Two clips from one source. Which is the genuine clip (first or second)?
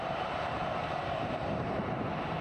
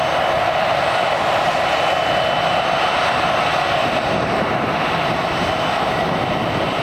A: second